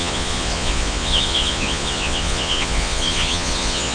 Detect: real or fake fake